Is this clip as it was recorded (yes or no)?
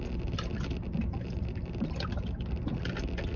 yes